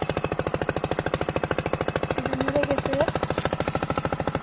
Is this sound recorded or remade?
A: recorded